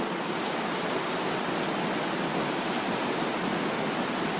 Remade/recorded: recorded